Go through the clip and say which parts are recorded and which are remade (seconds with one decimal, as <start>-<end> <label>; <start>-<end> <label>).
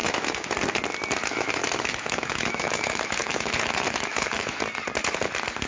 0.0-0.5 remade; 0.5-1.2 recorded; 1.2-4.6 remade; 4.6-5.7 recorded